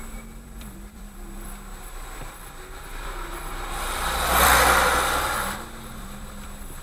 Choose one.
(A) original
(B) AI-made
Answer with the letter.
B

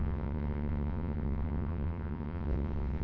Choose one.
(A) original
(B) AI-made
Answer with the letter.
B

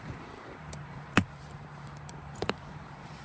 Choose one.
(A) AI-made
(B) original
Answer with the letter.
A